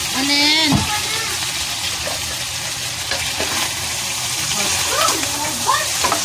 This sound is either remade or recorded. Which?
recorded